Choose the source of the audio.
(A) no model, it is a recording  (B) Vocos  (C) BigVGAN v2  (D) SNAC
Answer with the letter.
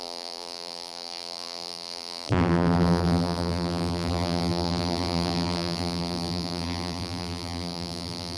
C